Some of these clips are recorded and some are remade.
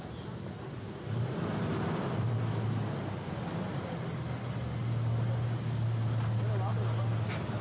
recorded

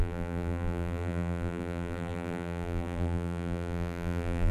remade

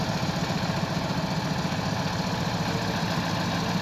recorded